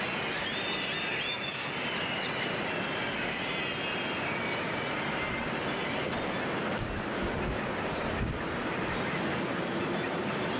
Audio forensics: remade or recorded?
recorded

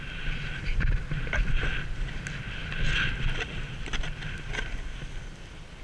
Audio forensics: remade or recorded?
recorded